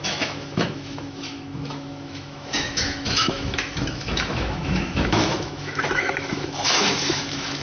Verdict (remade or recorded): remade